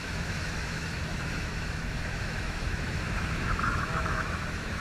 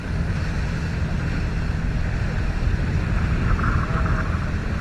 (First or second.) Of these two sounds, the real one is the second